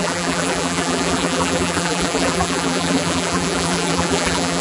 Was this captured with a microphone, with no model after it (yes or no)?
no